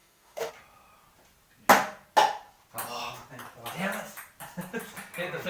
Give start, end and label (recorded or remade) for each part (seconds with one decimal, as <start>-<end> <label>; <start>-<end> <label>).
0.0-0.5 remade; 0.5-5.5 recorded